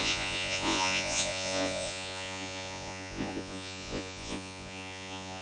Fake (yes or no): yes